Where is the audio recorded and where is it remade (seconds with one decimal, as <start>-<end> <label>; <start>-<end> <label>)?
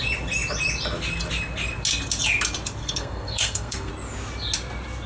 0.0-2.8 recorded; 2.8-3.9 remade; 3.9-5.1 recorded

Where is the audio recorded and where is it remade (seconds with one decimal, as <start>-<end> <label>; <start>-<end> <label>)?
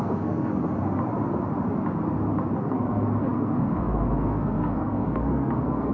0.0-0.5 remade; 0.5-2.6 recorded; 2.6-5.9 remade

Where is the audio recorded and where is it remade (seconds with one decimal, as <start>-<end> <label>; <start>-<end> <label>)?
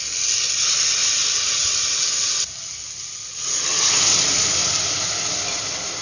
0.0-6.0 recorded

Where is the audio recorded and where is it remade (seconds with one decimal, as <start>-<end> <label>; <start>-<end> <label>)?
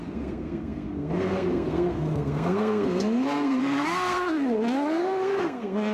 0.0-5.9 remade